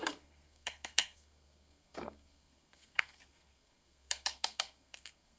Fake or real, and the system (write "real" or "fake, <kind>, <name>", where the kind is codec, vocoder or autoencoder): fake, codec, SNAC